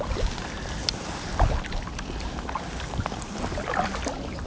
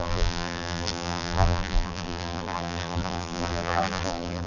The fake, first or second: second